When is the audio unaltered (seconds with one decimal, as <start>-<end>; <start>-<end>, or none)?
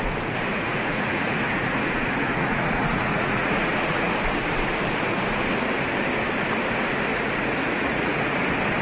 0.0-0.5; 4.1-7.1; 8.4-8.8